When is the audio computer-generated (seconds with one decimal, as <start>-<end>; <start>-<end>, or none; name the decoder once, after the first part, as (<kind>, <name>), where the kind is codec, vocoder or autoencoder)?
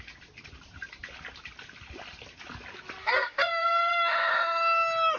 3.0-3.9 (codec, SNAC)